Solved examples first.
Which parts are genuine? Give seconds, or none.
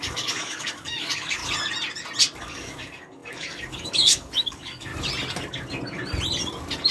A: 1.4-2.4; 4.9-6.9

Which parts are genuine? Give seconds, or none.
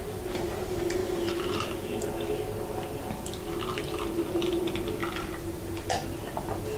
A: 0.0-1.0; 1.7-5.0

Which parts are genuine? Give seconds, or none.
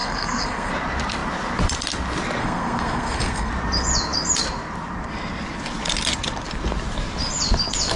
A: 0.7-2.4; 3.5-8.0